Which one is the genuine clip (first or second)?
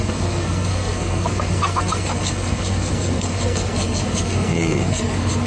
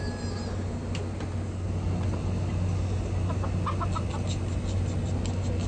second